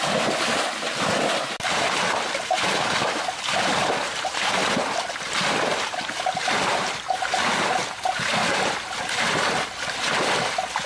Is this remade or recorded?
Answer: recorded